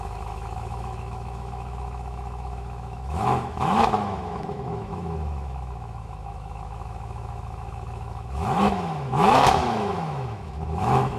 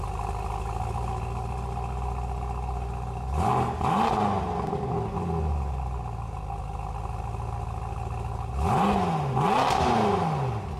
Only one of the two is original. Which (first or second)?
second